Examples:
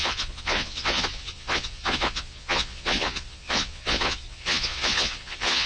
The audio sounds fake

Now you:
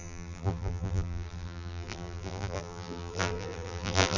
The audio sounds fake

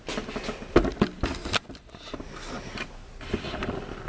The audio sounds real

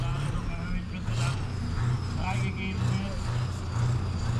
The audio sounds real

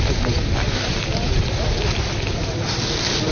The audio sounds real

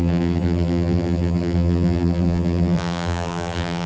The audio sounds fake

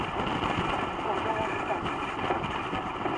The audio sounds real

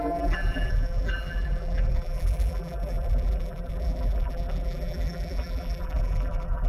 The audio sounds fake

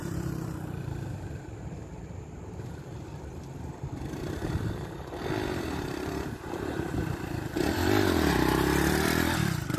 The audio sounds fake